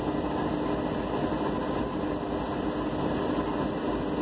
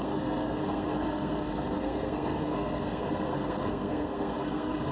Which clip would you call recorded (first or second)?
first